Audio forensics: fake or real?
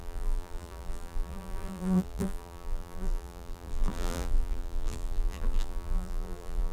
fake